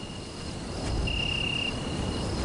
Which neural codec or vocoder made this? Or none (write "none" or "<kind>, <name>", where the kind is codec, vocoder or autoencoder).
none